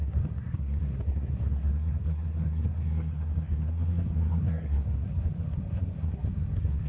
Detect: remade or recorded remade